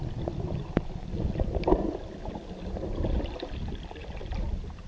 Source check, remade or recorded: recorded